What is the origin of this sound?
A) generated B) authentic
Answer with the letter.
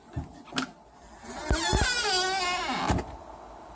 B